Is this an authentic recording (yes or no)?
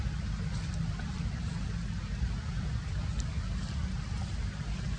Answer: no